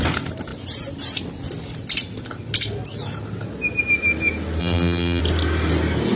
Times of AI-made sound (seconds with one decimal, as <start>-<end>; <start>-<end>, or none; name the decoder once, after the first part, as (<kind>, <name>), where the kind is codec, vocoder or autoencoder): 4.6-5.2 (vocoder, BigVGAN v2)